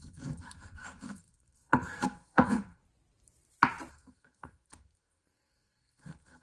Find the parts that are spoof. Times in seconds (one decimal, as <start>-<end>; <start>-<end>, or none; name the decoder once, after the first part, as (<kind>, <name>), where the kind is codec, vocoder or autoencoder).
0.0-2.8 (codec, SNAC); 3.9-6.4